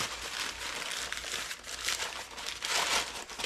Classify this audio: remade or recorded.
recorded